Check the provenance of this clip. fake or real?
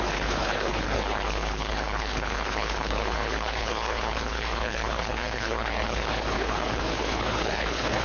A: fake